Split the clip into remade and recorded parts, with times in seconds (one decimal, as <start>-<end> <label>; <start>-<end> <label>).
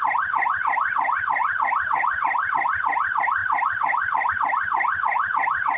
0.0-1.4 recorded; 1.4-2.5 remade; 2.5-3.4 recorded; 3.4-4.3 remade; 4.3-5.8 recorded